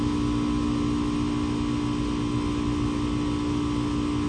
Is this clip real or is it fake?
real